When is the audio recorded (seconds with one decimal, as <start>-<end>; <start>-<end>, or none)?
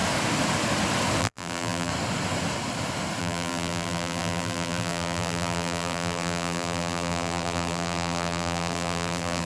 0.0-1.2; 1.9-3.2